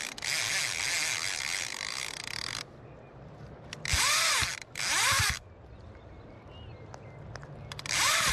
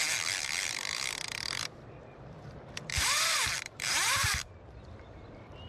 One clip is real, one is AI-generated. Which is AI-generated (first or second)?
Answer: second